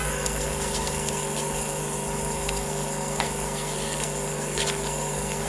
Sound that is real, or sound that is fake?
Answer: fake